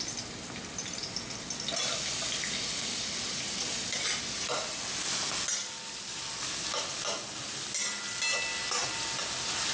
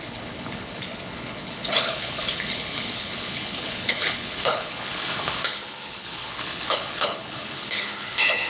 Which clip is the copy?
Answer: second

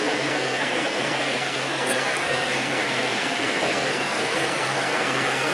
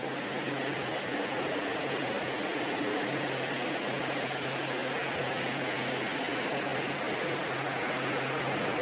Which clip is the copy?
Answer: first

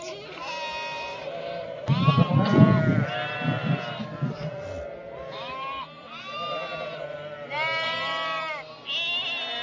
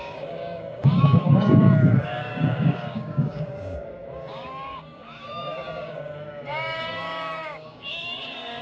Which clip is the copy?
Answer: second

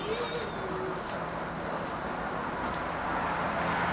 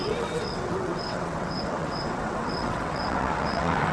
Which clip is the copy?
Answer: second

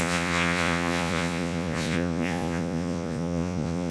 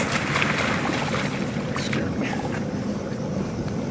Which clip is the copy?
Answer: first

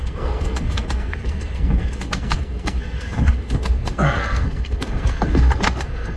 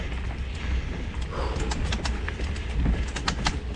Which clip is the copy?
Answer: first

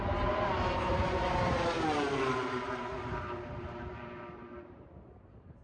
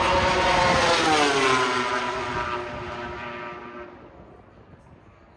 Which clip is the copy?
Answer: first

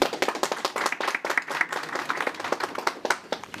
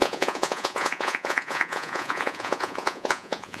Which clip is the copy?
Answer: second